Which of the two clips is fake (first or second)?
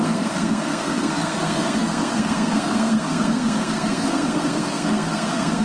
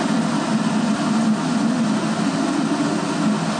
first